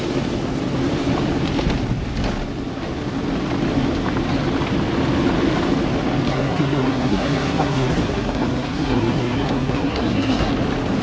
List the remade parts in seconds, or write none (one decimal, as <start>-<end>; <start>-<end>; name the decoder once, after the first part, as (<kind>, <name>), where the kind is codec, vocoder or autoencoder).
6.3-10.5 (codec, SNAC)